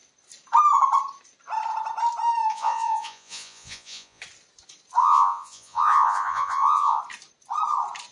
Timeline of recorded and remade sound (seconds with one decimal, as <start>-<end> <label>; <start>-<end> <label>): 0.0-2.5 recorded; 2.5-4.2 remade; 4.2-5.0 recorded; 5.0-7.0 remade; 7.0-8.1 recorded